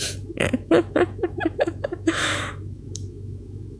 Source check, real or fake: fake